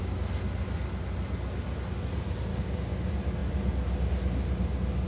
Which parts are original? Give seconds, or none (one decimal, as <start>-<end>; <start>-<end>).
0.0-2.5; 3.0-5.1